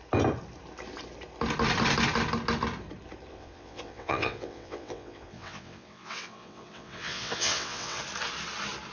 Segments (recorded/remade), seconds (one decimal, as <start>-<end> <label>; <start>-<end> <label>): 0.0-3.3 recorded; 3.3-8.0 remade; 8.0-8.9 recorded